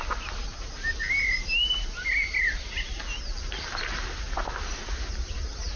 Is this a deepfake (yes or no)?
no